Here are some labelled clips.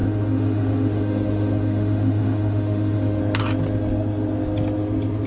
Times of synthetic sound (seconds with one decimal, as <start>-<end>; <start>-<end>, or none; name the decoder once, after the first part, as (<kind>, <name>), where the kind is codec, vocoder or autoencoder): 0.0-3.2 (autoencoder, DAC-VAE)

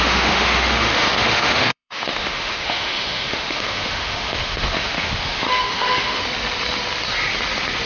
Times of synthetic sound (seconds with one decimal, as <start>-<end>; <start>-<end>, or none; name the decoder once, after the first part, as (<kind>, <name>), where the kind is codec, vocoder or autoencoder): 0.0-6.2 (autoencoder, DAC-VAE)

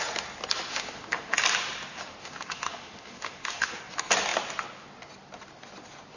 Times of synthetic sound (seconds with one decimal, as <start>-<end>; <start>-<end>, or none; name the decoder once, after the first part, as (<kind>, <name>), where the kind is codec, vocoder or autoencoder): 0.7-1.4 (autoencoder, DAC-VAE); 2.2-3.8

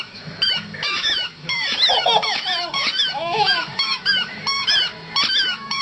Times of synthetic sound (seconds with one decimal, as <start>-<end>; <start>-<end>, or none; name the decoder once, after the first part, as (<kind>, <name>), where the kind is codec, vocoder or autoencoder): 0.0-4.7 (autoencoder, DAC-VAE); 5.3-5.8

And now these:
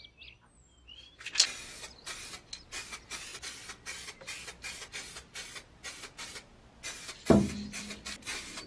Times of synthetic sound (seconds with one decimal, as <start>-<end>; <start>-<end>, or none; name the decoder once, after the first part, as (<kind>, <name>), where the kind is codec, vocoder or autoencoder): none

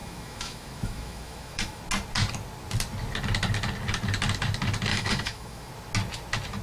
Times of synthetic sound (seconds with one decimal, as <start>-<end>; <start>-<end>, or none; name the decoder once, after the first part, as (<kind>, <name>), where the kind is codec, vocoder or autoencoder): 0.0-1.8 (autoencoder, DAC-VAE); 4.9-5.7